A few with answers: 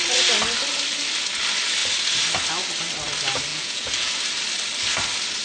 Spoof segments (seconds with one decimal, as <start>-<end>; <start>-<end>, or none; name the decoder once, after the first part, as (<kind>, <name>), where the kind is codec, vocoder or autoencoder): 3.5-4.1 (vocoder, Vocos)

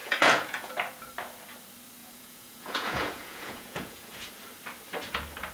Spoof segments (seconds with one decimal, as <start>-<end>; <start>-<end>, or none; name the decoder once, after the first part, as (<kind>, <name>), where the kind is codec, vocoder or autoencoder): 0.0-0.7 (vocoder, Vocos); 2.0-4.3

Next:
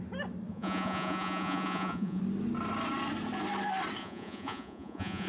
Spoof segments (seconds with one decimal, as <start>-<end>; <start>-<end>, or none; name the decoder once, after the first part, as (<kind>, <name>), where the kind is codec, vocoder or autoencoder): 0.5-2.2 (vocoder, Vocos); 4.0-5.3

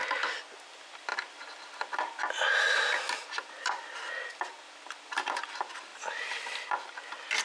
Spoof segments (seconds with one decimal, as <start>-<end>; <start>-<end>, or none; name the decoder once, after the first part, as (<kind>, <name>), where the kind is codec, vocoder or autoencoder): none

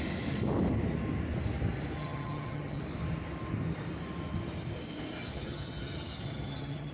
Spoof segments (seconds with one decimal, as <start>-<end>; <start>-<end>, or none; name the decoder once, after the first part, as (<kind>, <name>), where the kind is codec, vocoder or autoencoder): 2.0-2.8 (vocoder, HiFi-GAN); 5.3-6.9